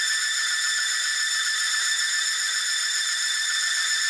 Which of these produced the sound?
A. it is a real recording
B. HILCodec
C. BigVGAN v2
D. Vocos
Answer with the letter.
C